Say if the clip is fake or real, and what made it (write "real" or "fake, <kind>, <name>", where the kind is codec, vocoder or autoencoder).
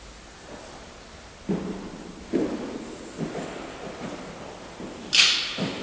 real